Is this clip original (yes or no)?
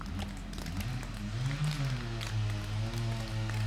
yes